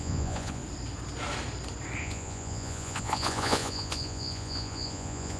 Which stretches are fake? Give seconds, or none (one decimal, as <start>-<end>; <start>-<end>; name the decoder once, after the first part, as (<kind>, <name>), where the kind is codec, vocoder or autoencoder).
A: 0.0-0.6 (vocoder, Vocos); 2.0-5.4